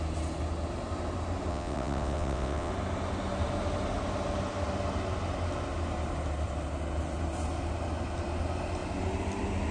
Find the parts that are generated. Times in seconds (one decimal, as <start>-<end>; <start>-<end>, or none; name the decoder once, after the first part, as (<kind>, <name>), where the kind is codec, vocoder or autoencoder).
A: 1.5-2.7 (vocoder, WaveNeXt)